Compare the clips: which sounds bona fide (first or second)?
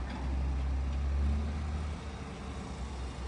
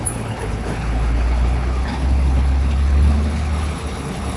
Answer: first